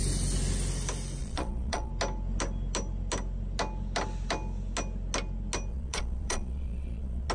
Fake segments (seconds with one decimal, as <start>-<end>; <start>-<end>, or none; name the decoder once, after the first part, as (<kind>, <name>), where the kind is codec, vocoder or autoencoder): 1.2-1.9 (vocoder, Vocos); 5.7-7.3